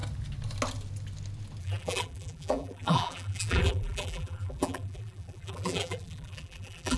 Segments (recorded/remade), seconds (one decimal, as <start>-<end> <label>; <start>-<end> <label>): 0.0-1.6 recorded; 1.6-7.0 remade